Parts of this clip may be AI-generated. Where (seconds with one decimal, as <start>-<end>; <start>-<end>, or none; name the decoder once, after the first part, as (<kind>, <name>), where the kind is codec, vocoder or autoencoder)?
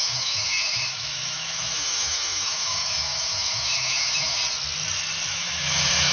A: 0.0-4.4 (autoencoder, DAC-VAE); 5.3-6.1